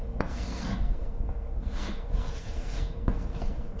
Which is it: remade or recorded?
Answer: remade